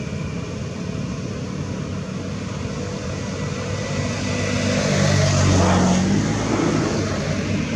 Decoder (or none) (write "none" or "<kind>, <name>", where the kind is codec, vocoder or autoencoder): none